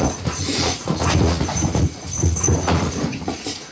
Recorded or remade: remade